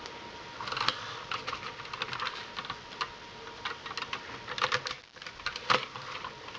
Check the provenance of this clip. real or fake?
real